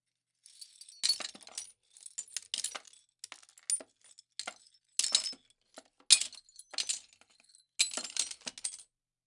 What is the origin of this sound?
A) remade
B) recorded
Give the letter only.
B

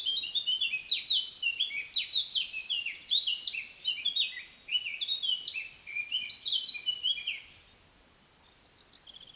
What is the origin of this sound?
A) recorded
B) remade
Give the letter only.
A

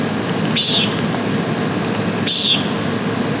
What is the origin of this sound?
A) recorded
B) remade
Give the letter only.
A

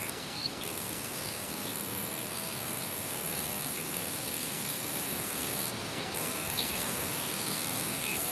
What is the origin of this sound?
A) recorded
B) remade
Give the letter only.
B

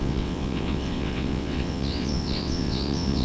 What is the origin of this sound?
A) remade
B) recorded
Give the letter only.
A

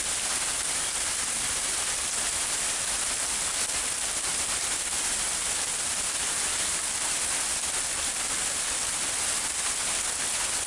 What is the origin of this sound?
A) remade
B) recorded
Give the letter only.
B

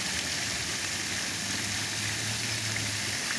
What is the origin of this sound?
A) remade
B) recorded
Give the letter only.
B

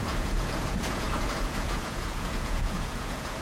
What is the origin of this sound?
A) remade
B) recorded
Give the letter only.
A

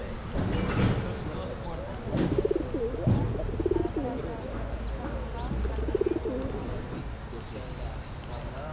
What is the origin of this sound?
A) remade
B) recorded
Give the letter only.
B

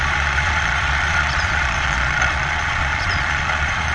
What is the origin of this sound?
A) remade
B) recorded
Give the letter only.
A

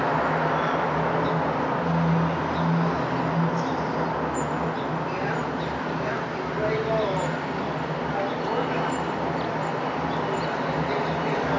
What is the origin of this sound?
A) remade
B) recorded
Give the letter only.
B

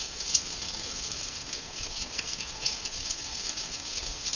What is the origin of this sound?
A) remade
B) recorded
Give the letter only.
A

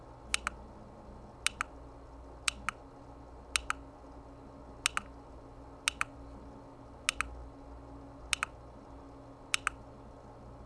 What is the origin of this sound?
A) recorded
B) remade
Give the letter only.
A